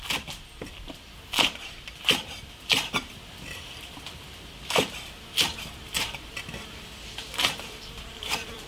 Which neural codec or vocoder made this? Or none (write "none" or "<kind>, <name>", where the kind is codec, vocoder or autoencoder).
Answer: vocoder, BigVGAN v2